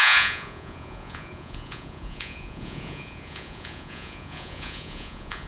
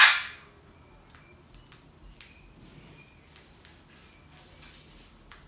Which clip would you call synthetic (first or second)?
first